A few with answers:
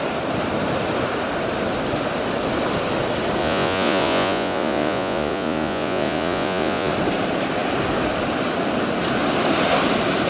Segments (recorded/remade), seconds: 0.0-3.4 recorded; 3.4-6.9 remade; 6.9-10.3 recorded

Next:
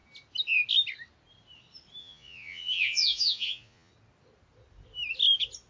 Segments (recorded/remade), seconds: 0.0-2.0 recorded; 2.0-3.9 remade; 3.9-5.7 recorded

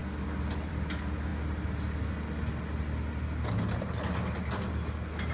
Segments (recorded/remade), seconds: 0.0-5.3 recorded

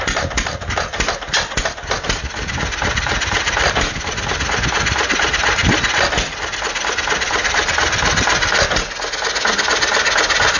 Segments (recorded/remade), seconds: 0.0-10.6 recorded

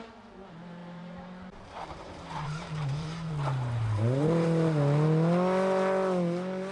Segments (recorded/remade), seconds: 0.0-0.8 recorded; 0.8-3.3 remade; 3.3-6.7 recorded

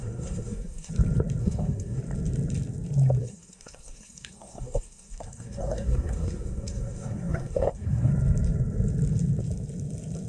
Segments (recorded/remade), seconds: 0.0-0.9 remade; 0.9-1.4 recorded; 1.4-2.0 remade; 2.0-3.2 recorded; 3.2-8.1 remade; 8.1-10.3 recorded

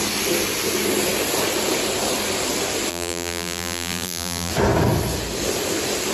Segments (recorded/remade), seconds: 0.0-2.9 recorded; 2.9-4.5 remade; 4.5-6.1 recorded